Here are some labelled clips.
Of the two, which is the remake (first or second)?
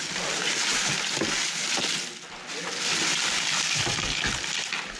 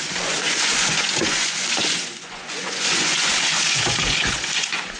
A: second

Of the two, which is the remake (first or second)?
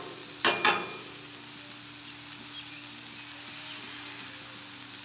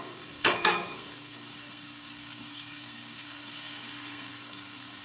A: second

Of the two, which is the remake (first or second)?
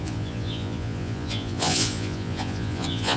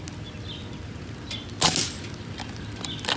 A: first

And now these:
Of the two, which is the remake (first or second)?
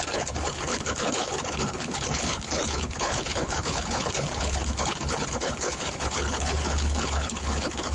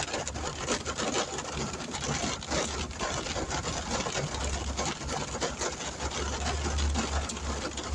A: first